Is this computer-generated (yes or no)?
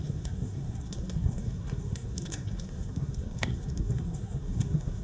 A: yes